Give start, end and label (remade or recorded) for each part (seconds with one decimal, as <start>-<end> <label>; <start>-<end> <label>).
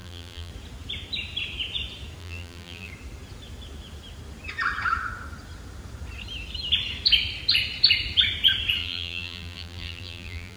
0.0-0.5 remade; 0.5-2.2 recorded; 2.2-2.9 remade; 2.9-8.8 recorded; 8.8-10.6 remade